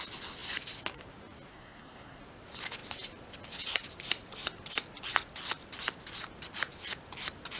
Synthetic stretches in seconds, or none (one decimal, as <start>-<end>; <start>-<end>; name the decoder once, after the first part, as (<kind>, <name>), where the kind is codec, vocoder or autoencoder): 1.5-2.2 (codec, SNAC)